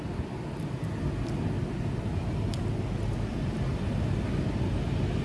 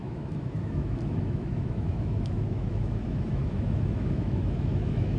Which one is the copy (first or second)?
second